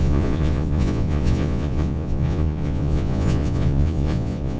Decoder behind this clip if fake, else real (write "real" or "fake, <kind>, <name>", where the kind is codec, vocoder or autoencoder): fake, vocoder, Vocos